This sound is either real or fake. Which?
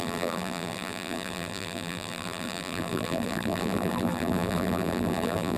fake